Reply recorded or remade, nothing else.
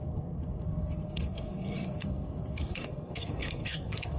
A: remade